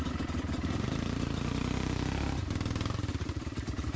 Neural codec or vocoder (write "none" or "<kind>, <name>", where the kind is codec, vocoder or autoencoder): none